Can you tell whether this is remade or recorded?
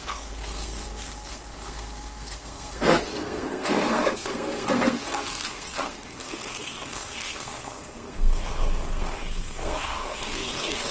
remade